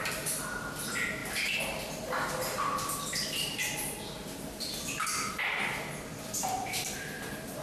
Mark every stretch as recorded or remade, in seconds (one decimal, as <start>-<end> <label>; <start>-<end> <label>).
0.0-7.6 recorded